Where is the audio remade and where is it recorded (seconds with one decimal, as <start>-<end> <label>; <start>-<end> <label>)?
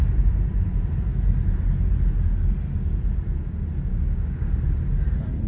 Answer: 0.0-3.9 recorded; 3.9-4.5 remade; 4.5-5.5 recorded